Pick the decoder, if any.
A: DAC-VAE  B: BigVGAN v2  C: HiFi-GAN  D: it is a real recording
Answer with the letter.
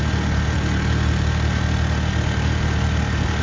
D